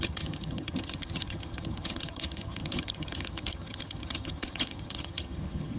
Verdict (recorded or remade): remade